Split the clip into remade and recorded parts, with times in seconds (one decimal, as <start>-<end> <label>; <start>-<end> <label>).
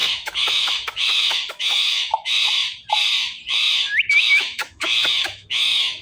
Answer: 0.0-2.6 remade; 2.6-3.4 recorded; 3.4-6.0 remade